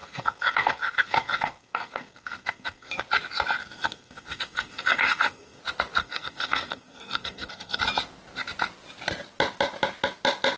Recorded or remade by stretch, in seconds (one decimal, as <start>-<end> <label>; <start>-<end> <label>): 0.0-3.0 remade; 3.0-3.6 recorded; 3.6-5.6 remade; 5.6-6.0 recorded; 6.0-7.8 remade; 7.8-10.6 recorded